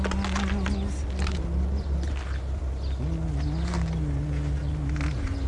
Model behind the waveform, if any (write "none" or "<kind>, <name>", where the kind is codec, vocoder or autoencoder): none